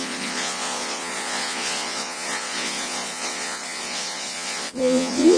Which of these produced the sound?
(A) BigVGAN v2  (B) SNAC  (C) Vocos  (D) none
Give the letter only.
C